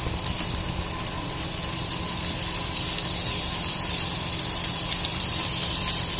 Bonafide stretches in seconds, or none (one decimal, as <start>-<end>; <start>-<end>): 0.0-3.3